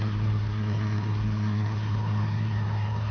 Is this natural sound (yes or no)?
no